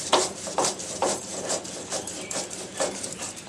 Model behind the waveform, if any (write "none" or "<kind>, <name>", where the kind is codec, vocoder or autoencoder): vocoder, BigVGAN v2